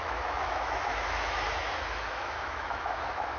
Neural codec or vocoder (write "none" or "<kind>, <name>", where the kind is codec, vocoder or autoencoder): autoencoder, DAC-VAE